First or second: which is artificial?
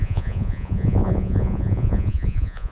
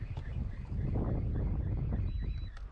first